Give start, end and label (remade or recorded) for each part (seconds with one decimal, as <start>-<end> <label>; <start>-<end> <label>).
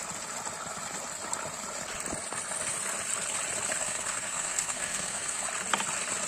0.0-3.8 recorded; 3.8-5.4 remade; 5.4-6.3 recorded